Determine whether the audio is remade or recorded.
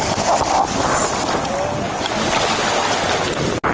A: recorded